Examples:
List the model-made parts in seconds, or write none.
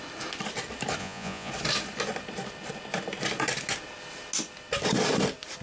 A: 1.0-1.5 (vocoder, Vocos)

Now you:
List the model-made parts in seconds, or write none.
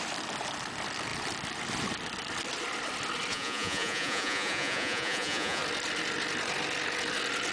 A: 3.3-5.6 (vocoder, Vocos)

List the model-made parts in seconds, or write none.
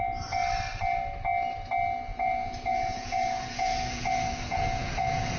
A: 2.1-5.4 (vocoder, Vocos)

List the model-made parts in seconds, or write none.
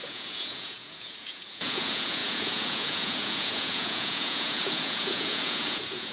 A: 0.0-6.1 (vocoder, Vocos)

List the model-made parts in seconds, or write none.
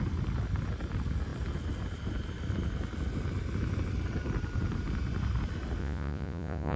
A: 5.8-6.8 (vocoder, Vocos)